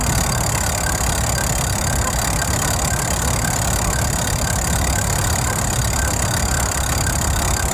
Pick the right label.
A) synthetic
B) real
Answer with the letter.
B